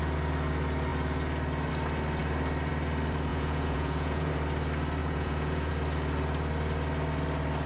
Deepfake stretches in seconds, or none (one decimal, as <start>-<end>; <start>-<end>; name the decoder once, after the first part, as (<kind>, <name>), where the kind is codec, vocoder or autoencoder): 3.3-4.3 (vocoder, Vocos); 5.0-5.7